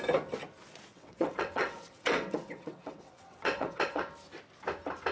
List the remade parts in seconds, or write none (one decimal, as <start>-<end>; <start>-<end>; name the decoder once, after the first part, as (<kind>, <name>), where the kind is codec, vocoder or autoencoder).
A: 0.9-4.0 (vocoder, WaveNeXt)